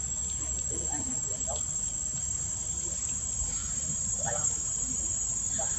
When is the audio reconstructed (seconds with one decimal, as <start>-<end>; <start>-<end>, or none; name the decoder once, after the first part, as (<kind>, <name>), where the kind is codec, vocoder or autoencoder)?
2.2-3.0 (vocoder, BigVGAN v2); 3.6-4.7